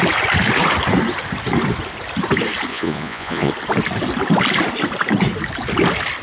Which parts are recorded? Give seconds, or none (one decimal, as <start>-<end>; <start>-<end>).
0.0-2.7; 3.5-6.2